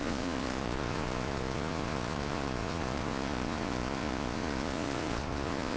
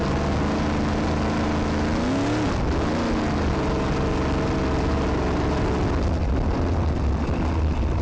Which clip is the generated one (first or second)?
first